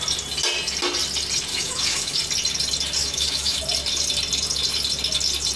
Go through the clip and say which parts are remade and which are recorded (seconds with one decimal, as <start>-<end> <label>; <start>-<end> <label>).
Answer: 0.0-1.5 recorded; 1.5-2.2 remade; 2.2-3.0 recorded; 3.0-3.6 remade; 3.6-5.6 recorded